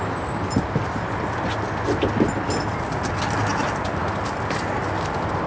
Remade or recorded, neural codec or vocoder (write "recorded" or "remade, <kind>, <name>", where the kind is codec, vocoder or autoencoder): recorded